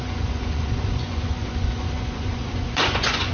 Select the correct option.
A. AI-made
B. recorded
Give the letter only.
A